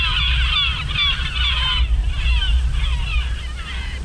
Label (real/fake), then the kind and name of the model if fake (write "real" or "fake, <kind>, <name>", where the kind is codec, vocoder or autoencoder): real